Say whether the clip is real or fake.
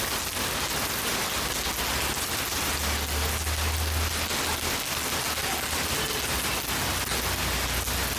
real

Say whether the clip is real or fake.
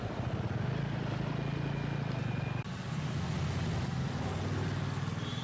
real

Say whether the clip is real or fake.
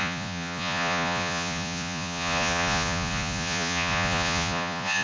fake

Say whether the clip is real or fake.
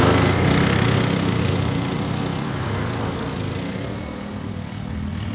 real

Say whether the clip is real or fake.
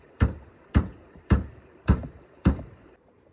fake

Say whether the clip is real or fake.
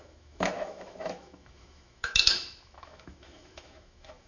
fake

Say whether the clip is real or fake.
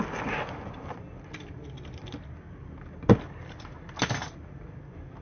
real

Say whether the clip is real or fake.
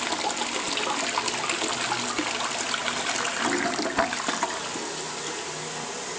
real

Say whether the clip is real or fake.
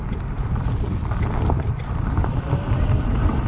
real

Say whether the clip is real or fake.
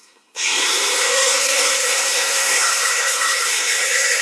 fake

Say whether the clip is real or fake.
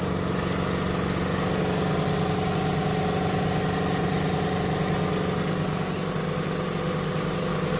real